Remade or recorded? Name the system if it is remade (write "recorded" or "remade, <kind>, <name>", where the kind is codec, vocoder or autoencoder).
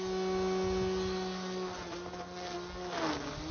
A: recorded